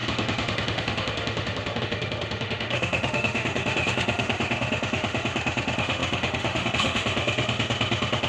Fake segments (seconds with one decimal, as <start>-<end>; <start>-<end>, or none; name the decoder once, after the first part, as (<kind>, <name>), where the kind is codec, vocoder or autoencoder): 0.0-8.3 (autoencoder, DAC-VAE)